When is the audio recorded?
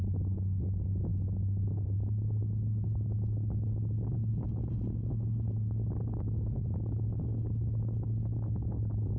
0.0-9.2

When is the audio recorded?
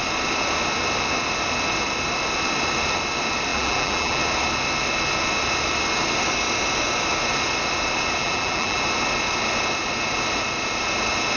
0.0-3.5; 4.2-8.2; 8.8-11.4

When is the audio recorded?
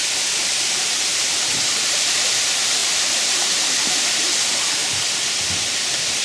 0.0-0.4; 2.2-2.8; 3.9-6.2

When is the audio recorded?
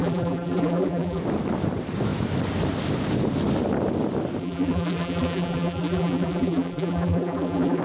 1.2-4.4